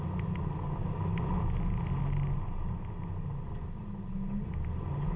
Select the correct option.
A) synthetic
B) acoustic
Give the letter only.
B